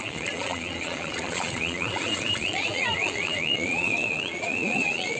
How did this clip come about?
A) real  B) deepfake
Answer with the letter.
B